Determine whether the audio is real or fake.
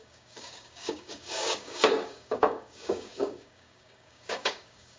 fake